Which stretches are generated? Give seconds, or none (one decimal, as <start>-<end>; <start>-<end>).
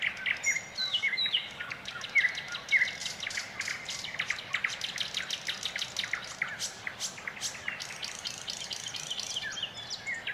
0.9-2.0